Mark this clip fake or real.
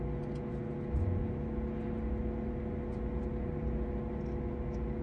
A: real